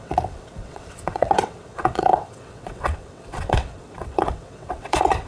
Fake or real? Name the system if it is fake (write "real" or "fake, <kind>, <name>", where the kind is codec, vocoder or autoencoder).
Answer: fake, vocoder, WaveNeXt